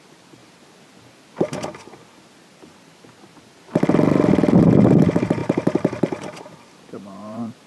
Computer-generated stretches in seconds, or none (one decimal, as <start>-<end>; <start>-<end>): 0.0-0.4; 5.0-7.7